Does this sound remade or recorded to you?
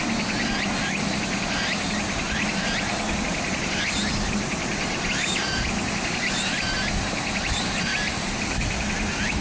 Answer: recorded